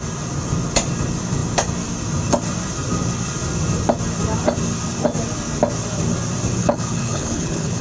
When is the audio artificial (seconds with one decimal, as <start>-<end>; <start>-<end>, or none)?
6.6-7.8